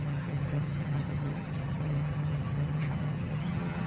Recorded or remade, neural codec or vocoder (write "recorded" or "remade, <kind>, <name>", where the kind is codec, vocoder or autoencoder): remade, vocoder, HiFi-GAN